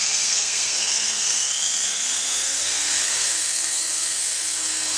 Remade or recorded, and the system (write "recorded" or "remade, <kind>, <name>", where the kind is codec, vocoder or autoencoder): remade, codec, SNAC